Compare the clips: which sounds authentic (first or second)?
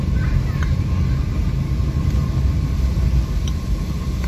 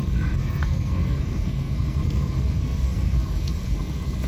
first